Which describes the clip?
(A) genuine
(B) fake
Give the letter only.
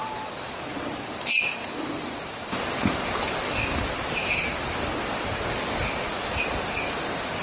B